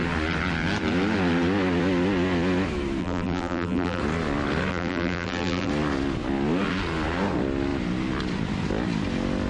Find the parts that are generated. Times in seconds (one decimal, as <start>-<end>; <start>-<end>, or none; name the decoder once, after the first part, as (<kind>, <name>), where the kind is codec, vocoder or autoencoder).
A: 3.0-4.0 (vocoder, BigVGAN v2); 4.7-5.7